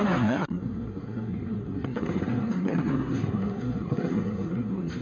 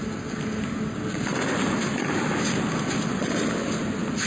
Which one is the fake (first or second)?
first